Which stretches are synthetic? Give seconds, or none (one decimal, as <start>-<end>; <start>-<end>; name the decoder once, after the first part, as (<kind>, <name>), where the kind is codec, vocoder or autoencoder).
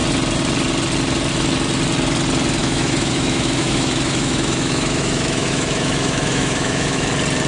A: 2.6-7.1 (autoencoder, DAC-VAE)